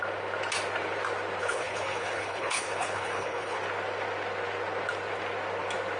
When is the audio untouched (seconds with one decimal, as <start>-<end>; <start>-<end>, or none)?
0.0-1.4; 3.6-6.0